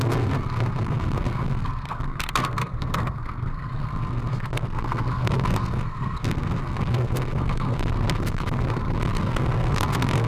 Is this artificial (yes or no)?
yes